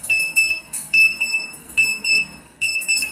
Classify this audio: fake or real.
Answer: fake